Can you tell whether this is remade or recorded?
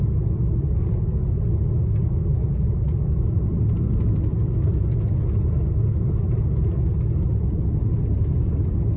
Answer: recorded